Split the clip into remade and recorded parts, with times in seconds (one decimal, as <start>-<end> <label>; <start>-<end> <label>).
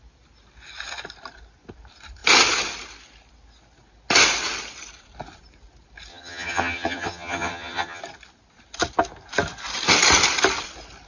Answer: 0.0-6.1 recorded; 6.1-8.0 remade; 8.0-11.1 recorded